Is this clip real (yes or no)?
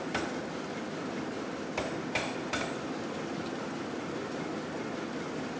yes